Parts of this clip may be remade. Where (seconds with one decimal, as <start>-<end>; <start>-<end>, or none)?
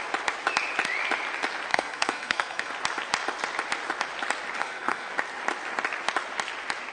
1.7-2.7; 4.6-5.1